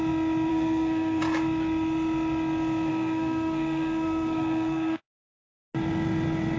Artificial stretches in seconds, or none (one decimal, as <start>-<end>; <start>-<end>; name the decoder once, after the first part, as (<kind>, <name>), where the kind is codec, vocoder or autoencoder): 0.5-1.2 (codec, SNAC); 2.9-5.3